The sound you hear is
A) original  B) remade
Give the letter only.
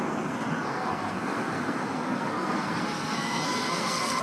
B